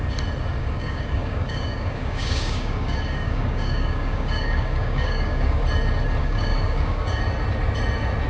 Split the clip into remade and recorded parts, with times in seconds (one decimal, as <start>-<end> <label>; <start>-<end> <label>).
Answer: 0.0-0.6 recorded; 0.6-5.6 remade; 5.6-6.2 recorded; 6.2-7.2 remade; 7.2-8.3 recorded

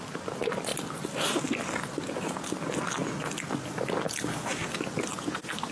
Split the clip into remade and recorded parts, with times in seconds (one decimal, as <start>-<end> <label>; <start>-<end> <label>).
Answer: 0.0-5.7 recorded